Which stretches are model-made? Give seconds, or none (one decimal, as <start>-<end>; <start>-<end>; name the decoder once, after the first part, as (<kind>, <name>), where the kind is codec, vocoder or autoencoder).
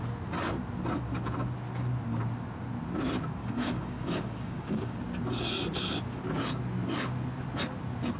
3.4-5.0 (codec, DAC)